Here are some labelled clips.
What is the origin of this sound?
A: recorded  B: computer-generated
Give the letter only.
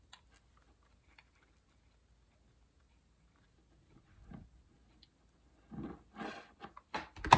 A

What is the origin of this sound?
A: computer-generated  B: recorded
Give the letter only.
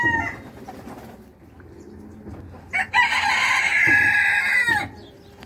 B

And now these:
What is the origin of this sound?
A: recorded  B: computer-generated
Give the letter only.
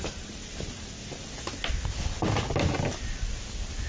A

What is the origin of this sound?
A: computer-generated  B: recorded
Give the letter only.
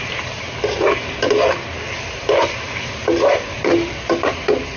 A